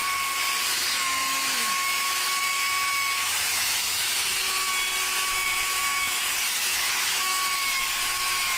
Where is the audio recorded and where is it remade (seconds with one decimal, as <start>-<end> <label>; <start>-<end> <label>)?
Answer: 0.0-0.7 recorded; 0.7-4.7 remade; 4.7-5.3 recorded; 5.3-8.6 remade